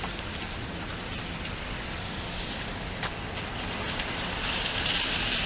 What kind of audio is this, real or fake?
real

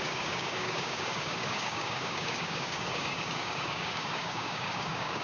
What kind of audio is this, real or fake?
fake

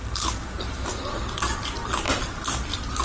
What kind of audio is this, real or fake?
real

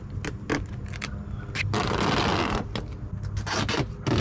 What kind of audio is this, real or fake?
real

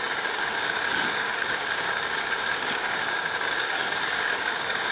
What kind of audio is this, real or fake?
fake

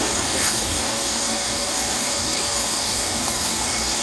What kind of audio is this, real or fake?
fake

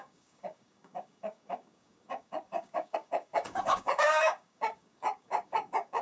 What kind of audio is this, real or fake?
fake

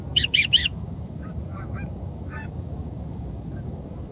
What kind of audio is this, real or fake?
fake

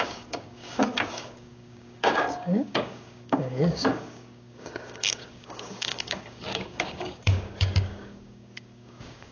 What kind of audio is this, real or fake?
fake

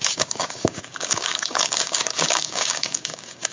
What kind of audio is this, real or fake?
fake